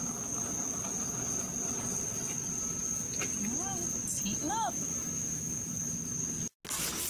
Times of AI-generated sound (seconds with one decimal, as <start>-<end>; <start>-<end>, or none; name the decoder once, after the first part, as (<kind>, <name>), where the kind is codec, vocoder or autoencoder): 4.4-5.7 (autoencoder, DAC-VAE)